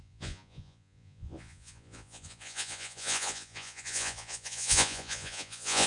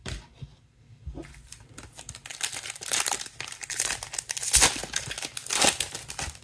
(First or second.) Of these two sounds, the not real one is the first